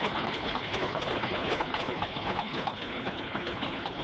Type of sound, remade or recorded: remade